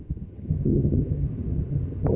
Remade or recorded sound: remade